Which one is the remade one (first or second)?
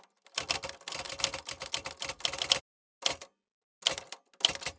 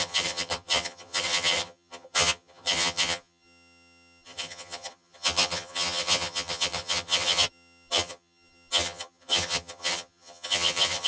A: second